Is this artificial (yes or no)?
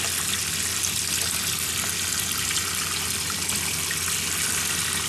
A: no